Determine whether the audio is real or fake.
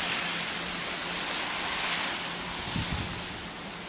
real